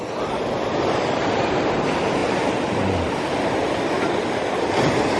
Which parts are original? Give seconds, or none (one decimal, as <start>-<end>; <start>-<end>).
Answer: 0.0-5.2